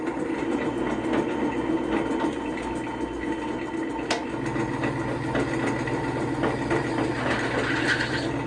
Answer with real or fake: real